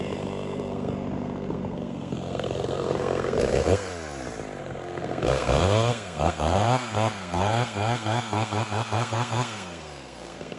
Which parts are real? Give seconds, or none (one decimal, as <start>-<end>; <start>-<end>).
3.9-4.6